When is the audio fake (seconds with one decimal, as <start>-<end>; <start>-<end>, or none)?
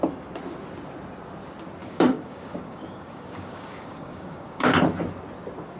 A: 1.8-4.8